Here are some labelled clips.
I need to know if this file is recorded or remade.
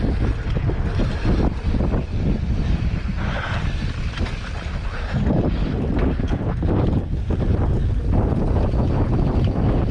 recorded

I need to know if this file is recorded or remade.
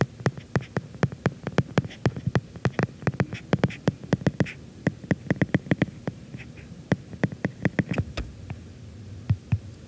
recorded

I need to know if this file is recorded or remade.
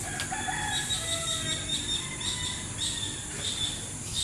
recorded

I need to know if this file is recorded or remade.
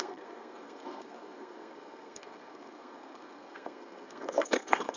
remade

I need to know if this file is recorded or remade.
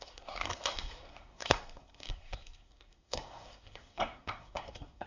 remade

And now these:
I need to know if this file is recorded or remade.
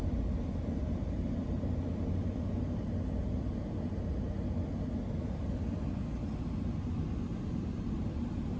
recorded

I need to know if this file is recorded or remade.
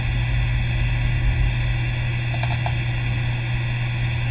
recorded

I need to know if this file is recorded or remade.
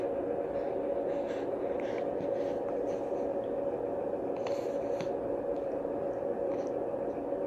recorded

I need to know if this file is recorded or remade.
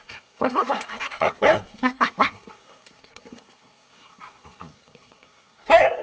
remade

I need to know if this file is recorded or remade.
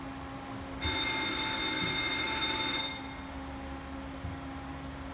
recorded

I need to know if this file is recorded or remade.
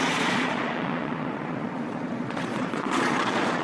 remade